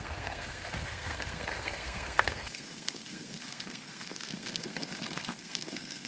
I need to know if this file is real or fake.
fake